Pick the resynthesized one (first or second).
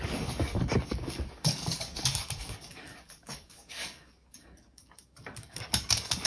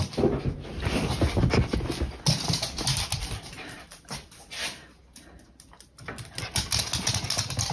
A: first